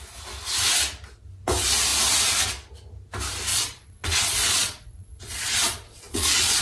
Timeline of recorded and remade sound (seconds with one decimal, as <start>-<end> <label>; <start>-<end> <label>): 0.0-3.5 recorded; 3.5-6.6 remade